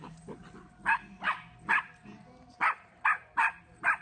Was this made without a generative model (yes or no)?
yes